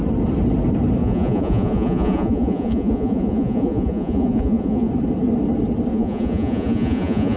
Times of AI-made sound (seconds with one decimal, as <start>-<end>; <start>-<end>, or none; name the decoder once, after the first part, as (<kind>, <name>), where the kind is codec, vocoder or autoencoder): 1.0-4.9 (vocoder, Vocos); 5.9-7.4

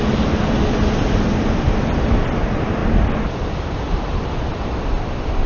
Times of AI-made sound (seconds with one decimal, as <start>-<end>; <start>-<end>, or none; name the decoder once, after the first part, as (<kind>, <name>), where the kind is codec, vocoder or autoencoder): none